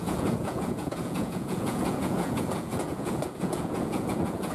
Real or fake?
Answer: fake